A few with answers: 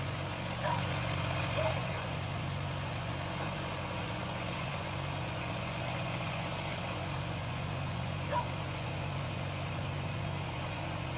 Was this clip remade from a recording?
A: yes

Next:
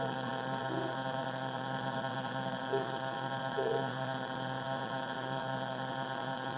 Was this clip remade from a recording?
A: yes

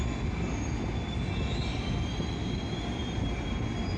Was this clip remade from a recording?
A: no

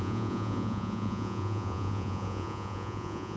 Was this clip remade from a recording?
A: yes